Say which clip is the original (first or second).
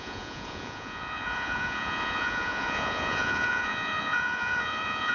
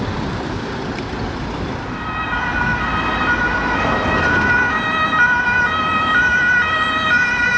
second